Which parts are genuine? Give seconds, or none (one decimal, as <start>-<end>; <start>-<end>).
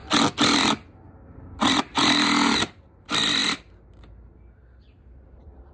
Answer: 0.0-5.7